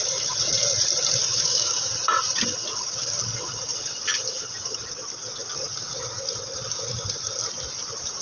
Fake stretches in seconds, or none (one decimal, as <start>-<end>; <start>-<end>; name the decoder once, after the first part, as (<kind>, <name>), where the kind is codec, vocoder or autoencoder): 1.2-1.9 (autoencoder, DAC-VAE)